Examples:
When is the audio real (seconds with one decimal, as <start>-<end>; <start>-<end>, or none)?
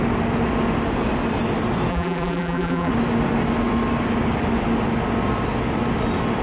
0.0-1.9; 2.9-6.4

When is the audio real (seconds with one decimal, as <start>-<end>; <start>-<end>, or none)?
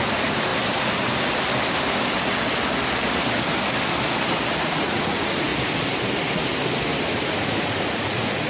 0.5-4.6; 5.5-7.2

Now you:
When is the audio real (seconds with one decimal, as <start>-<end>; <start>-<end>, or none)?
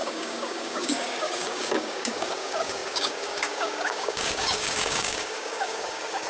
none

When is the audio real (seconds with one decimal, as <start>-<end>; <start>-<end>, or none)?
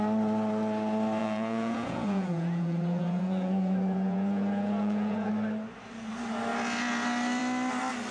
0.0-1.2; 5.3-8.1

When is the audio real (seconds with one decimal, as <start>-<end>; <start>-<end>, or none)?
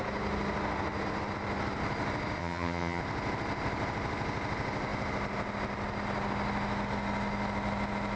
0.0-2.4; 3.0-8.2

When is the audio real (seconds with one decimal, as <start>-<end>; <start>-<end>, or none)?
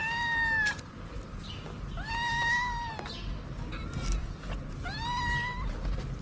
0.0-4.2; 4.7-6.2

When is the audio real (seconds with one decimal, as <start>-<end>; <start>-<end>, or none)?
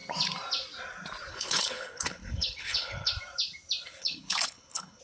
0.0-1.3; 3.1-4.0